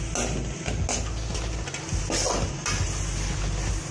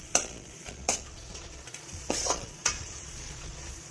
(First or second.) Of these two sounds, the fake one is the second